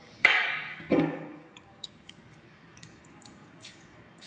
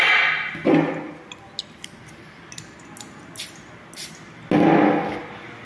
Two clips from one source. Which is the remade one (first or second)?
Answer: first